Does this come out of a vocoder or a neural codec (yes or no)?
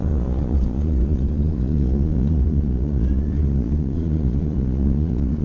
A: yes